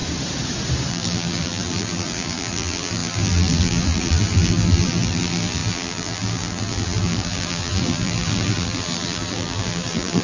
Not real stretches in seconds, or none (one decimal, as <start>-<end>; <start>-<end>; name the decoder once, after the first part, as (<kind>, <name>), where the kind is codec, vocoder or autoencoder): 0.9-10.2 (vocoder, BigVGAN v2)